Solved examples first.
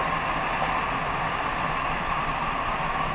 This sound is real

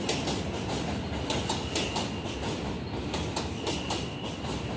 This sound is real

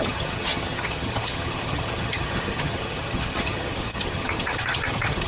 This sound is fake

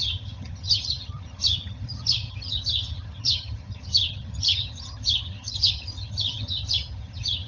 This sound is fake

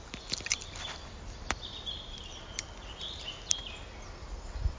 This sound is real